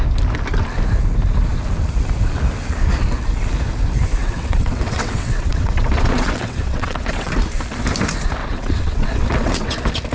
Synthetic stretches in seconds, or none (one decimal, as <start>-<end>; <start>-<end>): 4.2-7.3; 8.4-9.7